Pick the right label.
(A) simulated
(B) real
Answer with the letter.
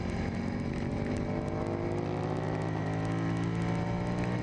B